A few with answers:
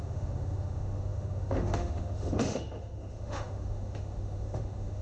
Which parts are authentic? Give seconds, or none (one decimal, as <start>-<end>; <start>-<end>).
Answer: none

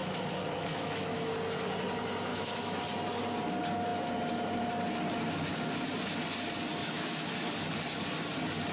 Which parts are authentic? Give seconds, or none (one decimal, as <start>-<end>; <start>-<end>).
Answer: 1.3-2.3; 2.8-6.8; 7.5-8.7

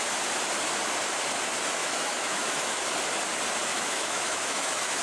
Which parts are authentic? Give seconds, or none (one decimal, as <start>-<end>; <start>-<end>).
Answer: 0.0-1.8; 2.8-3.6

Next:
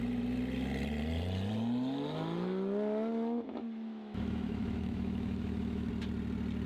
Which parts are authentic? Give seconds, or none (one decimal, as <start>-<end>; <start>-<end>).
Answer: 0.0-3.1; 5.9-6.7

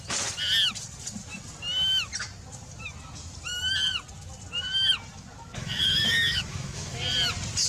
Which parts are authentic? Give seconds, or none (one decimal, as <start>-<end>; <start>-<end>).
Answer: 0.0-5.5; 7.0-7.7